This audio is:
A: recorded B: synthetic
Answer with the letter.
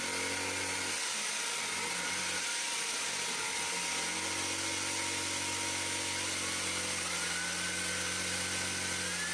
A